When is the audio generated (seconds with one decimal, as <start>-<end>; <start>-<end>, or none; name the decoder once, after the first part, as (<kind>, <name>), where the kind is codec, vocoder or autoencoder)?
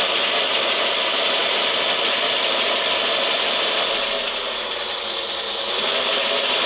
none